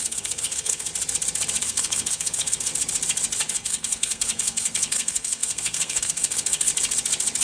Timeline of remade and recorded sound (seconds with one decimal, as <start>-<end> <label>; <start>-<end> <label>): 0.0-0.9 remade; 0.9-1.6 recorded; 1.6-2.7 remade; 2.7-3.5 recorded; 3.5-6.7 remade; 6.7-7.4 recorded